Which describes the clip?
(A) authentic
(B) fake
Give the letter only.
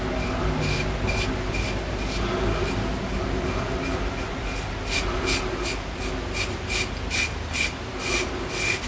A